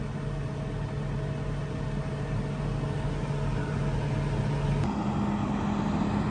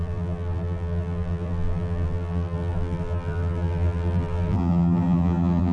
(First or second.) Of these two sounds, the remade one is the second